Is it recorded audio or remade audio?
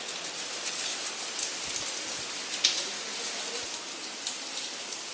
recorded